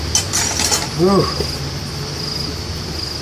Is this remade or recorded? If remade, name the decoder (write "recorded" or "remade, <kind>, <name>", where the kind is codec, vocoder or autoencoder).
recorded